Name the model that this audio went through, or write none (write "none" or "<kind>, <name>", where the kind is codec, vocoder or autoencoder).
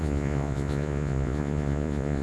vocoder, Vocos